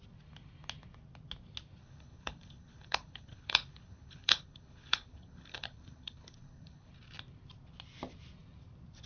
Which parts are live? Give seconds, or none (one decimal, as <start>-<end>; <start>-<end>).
0.0-1.8; 6.9-9.1